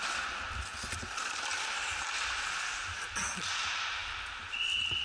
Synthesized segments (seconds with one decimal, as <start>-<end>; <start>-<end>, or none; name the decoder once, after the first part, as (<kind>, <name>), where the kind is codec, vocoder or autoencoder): none